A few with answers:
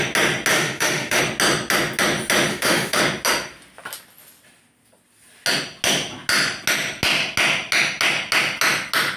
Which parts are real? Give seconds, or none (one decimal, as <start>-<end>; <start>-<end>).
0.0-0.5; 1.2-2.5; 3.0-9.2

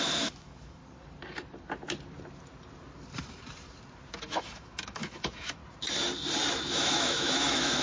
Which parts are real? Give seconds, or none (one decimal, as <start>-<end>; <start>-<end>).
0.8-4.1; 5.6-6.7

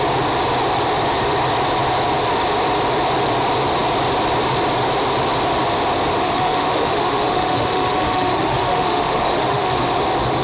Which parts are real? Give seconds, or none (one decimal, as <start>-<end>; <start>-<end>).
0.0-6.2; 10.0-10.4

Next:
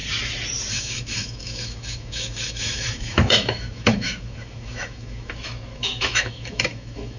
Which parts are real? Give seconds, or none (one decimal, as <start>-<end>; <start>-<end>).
0.0-0.7

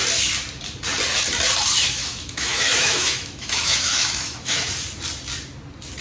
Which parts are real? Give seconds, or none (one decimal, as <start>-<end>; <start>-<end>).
0.0-1.8; 4.7-6.0